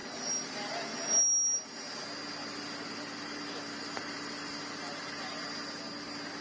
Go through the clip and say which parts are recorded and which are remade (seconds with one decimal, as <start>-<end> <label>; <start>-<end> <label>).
0.0-6.4 recorded